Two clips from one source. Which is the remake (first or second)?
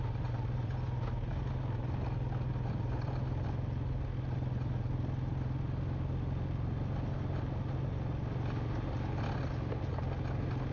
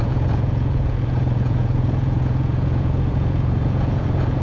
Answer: second